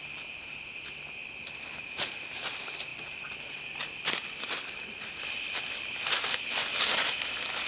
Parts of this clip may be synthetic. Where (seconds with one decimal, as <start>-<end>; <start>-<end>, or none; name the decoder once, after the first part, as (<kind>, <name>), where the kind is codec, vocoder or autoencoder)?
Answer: 2.9-7.7 (vocoder, BigVGAN v2)